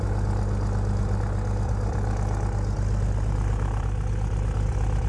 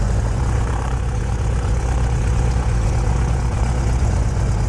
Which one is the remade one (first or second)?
second